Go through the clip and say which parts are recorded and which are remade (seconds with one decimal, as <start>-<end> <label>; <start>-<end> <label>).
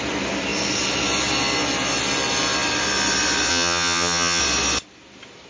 0.0-3.5 recorded; 3.5-4.4 remade; 4.4-5.5 recorded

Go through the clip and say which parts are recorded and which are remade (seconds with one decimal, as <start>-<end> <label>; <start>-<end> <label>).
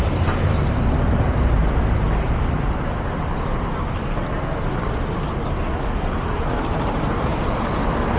0.0-1.6 remade; 1.6-6.3 recorded; 6.3-7.3 remade; 7.3-8.2 recorded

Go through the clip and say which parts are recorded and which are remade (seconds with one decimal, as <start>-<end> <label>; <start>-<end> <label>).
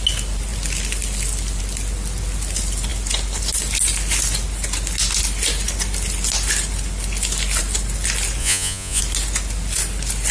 0.0-8.4 recorded; 8.4-9.0 remade; 9.0-10.3 recorded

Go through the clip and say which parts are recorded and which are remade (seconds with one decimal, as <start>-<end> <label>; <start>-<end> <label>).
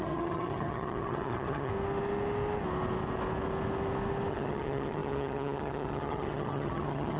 0.0-1.7 remade; 1.7-4.3 recorded; 4.3-7.2 remade